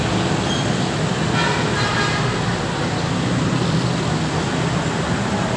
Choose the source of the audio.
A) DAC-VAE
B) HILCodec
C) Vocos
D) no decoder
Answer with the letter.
D